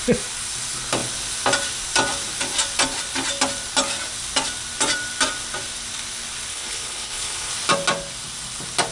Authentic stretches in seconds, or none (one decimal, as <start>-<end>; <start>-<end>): 0.0-6.5; 7.5-8.9